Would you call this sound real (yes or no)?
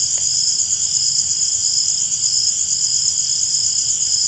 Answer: yes